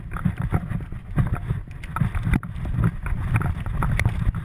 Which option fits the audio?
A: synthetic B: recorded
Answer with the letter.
B